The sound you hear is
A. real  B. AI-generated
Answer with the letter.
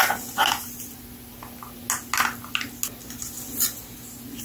A